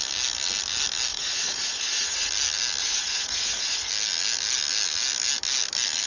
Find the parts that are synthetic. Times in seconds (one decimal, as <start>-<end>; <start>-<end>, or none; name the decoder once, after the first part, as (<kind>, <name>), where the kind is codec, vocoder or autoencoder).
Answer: 1.1-2.3 (vocoder, Vocos); 2.8-3.9